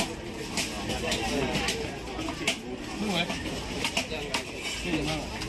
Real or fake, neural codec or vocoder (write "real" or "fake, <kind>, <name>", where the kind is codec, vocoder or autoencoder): real